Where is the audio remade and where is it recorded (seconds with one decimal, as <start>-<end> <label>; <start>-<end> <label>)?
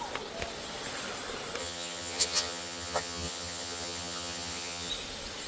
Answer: 0.0-1.6 recorded; 1.6-4.9 remade; 4.9-5.5 recorded